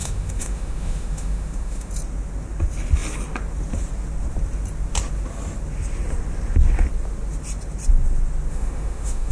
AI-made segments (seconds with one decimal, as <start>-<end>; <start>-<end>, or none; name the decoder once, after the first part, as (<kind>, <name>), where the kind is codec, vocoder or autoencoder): 0.0-1.9 (autoencoder, DAC-VAE); 8.5-9.3